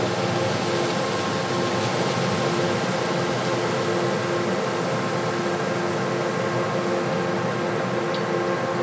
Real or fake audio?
real